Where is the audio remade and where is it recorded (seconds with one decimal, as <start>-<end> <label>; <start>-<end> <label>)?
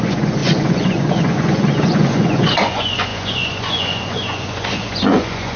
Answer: 0.0-5.6 remade